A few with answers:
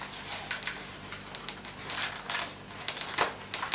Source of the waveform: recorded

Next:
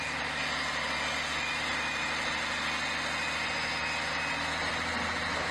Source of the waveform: recorded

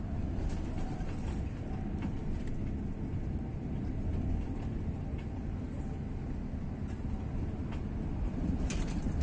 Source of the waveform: recorded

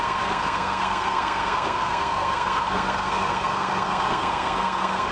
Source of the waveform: remade